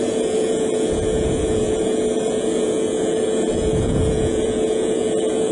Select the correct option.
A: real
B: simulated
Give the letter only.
B